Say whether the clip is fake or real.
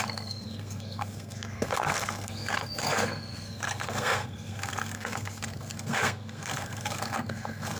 fake